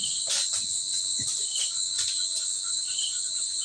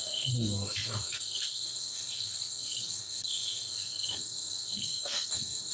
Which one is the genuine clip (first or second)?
first